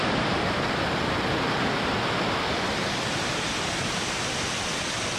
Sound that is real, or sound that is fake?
real